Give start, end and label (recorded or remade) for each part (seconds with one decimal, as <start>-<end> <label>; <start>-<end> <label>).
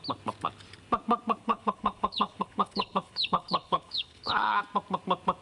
0.0-1.4 recorded; 1.4-4.6 remade; 4.6-5.4 recorded